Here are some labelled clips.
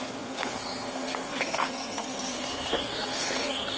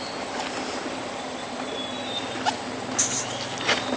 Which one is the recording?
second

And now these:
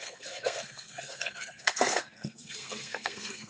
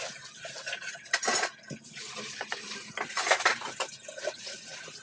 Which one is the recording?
second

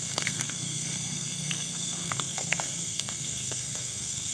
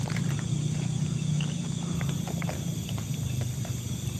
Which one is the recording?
second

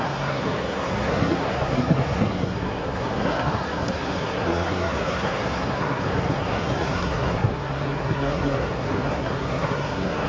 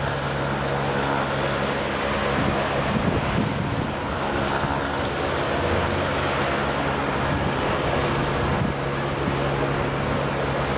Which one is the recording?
second